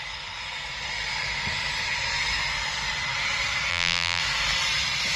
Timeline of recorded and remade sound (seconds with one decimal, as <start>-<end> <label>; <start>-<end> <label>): 0.0-3.7 recorded; 3.7-4.2 remade; 4.2-5.2 recorded